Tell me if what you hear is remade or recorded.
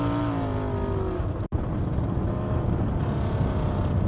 recorded